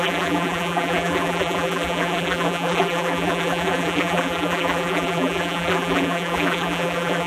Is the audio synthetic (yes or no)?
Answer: yes